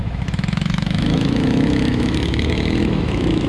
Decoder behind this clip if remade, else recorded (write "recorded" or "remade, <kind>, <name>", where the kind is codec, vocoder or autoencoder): remade, autoencoder, DAC-VAE